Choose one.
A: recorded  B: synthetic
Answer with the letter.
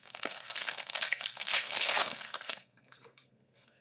B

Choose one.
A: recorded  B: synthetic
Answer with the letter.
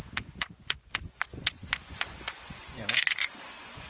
B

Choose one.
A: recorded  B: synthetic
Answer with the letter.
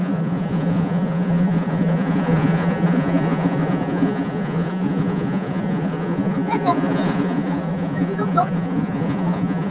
B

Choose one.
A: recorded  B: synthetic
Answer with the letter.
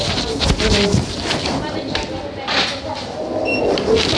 A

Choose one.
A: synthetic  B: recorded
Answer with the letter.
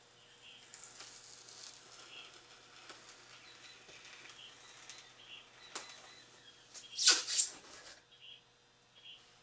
B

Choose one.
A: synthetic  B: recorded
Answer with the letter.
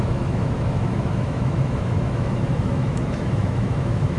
A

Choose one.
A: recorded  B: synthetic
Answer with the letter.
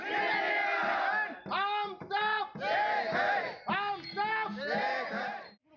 A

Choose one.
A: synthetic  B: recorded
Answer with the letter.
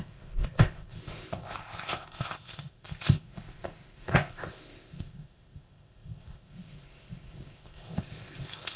A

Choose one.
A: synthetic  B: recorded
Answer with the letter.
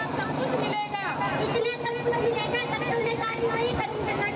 B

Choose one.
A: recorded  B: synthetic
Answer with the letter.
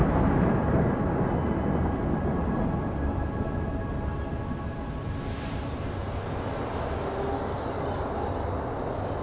A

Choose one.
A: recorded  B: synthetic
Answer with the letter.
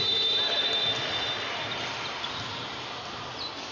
A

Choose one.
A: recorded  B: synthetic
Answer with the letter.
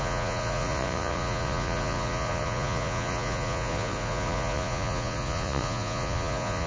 B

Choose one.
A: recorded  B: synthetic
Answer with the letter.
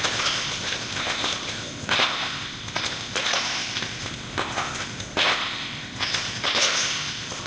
B